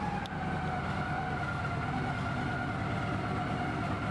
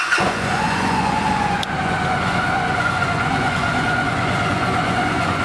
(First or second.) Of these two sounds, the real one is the first